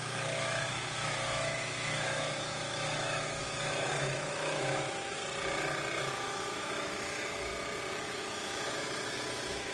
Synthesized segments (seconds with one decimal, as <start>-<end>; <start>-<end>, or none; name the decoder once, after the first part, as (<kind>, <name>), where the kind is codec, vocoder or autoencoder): 0.0-5.2 (autoencoder, DAC-VAE); 6.1-7.5; 8.0-9.7